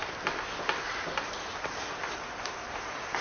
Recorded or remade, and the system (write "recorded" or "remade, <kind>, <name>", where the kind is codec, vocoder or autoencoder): recorded